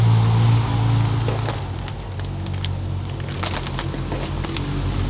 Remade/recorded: recorded